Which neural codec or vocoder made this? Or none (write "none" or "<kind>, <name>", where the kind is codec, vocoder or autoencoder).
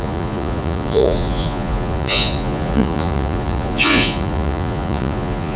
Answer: vocoder, Vocos